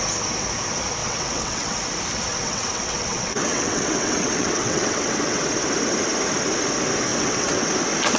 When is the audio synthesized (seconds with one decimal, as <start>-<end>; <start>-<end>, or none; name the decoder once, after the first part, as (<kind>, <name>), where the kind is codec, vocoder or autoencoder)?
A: 1.0-1.8 (vocoder, WaveNeXt); 2.3-5.4; 7.1-7.7